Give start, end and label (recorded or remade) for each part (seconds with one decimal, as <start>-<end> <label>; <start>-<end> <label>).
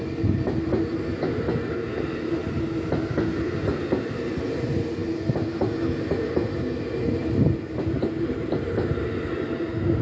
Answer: 0.0-10.0 recorded